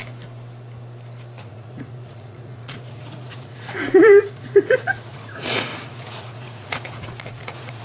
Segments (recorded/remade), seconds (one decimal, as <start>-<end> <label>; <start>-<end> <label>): 0.0-1.4 recorded; 1.4-7.8 remade